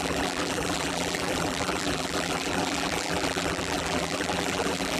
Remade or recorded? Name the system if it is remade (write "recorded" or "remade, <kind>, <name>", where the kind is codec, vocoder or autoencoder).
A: remade, vocoder, BigVGAN v2